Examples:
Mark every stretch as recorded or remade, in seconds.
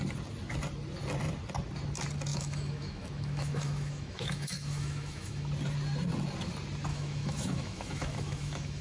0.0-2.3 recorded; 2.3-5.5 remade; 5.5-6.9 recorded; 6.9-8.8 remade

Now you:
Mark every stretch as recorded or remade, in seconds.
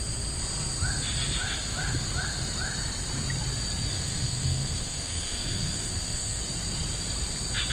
0.0-3.9 recorded; 3.9-6.4 remade; 6.4-7.7 recorded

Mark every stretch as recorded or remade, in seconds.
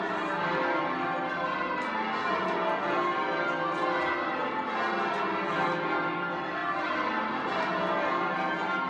0.0-8.9 recorded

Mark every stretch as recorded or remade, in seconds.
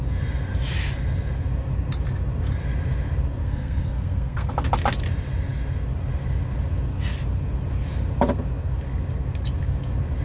0.0-3.4 recorded; 3.4-4.5 remade; 4.5-10.2 recorded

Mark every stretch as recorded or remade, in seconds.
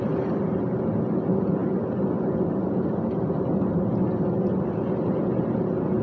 0.0-6.0 recorded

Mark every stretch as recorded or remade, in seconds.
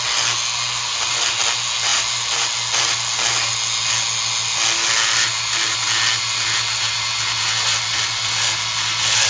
0.0-9.3 recorded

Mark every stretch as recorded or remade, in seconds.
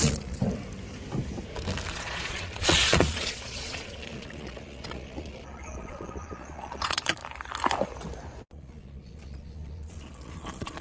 0.0-0.4 remade; 0.4-1.9 recorded; 1.9-7.2 remade; 7.2-8.5 recorded; 8.5-10.8 remade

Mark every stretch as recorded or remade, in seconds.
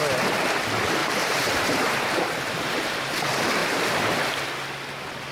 0.0-1.0 recorded; 1.0-3.1 remade; 3.1-3.6 recorded; 3.6-4.1 remade; 4.1-5.3 recorded